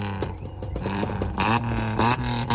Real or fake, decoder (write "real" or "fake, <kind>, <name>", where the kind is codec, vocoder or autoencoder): fake, vocoder, BigVGAN v2